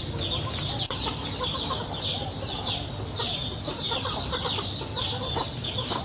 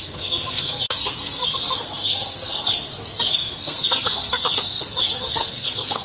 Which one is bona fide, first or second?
first